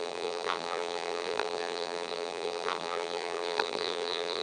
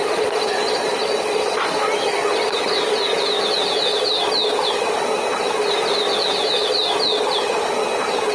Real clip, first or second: second